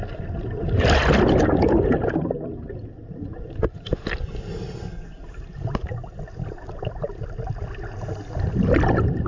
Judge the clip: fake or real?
real